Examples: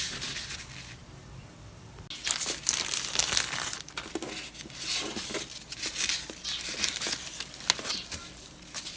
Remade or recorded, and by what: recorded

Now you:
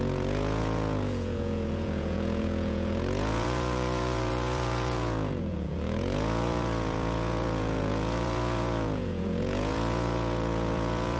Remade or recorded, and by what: remade, vocoder, Vocos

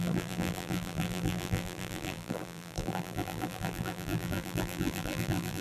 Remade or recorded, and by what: remade, vocoder, BigVGAN v2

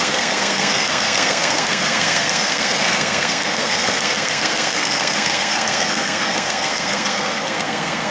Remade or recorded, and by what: remade, codec, SNAC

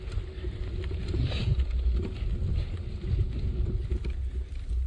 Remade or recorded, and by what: recorded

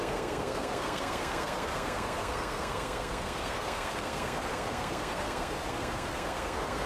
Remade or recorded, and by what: remade, codec, SNAC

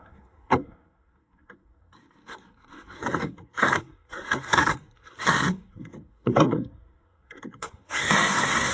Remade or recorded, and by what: remade, codec, SNAC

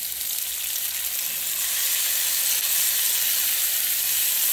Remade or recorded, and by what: recorded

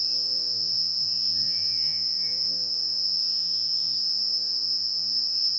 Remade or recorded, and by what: remade, vocoder, Vocos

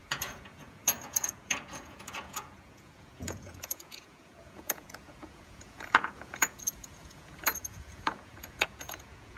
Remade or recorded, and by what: remade, vocoder, Vocos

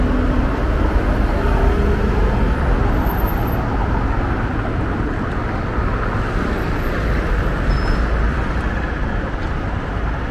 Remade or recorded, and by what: recorded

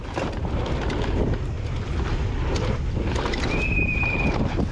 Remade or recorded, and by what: recorded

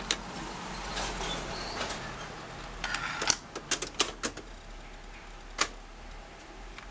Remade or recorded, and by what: recorded